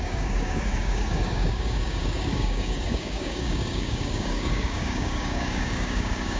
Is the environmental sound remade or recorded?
remade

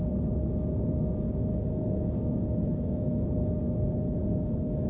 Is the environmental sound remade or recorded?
remade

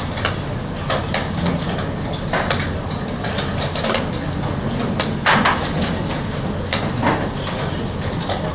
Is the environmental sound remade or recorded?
recorded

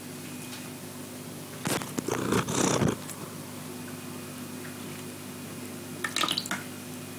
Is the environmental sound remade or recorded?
recorded